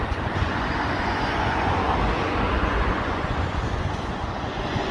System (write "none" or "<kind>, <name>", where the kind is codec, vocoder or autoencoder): vocoder, Vocos